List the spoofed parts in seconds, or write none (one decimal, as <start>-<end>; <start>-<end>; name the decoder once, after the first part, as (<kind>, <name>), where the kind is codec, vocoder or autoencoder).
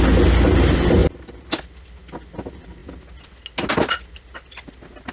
none